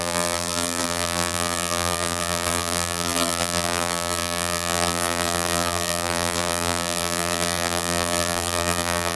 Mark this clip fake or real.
fake